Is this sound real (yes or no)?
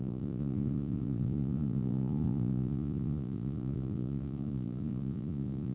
no